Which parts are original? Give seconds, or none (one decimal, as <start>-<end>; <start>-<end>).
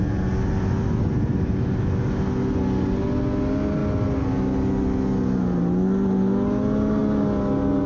0.0-7.9